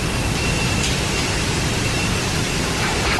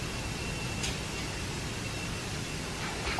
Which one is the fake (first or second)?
first